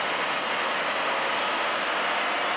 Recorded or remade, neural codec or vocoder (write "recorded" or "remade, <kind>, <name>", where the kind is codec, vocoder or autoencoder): recorded